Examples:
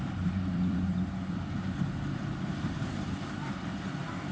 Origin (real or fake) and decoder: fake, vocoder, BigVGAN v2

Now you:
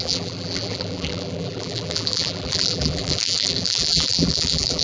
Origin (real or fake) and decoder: fake, vocoder, BigVGAN v2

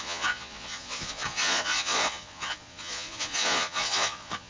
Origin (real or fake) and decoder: fake, vocoder, Vocos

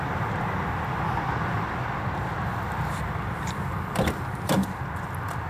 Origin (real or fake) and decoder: real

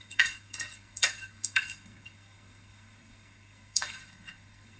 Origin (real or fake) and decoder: fake, codec, SNAC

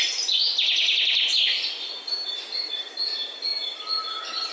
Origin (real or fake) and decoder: real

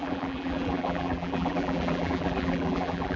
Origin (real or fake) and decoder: fake, vocoder, BigVGAN v2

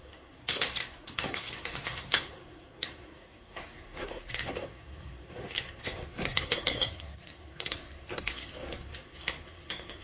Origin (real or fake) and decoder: fake, codec, SNAC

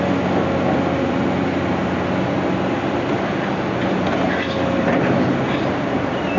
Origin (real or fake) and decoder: real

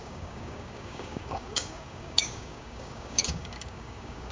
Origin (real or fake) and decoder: fake, codec, DAC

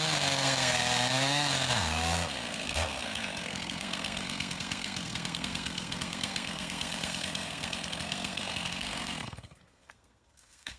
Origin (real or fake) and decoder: fake, codec, SNAC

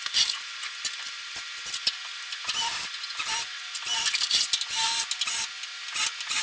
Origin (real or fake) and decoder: real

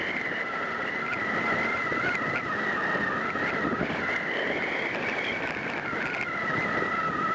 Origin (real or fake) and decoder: real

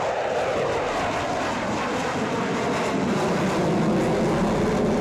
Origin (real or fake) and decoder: real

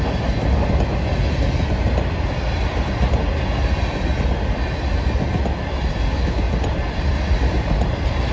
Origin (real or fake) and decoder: real